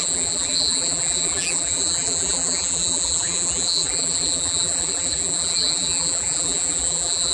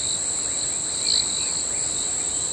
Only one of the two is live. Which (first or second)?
second